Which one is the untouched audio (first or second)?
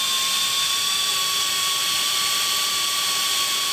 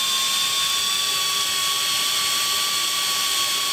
second